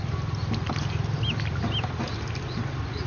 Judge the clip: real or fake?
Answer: real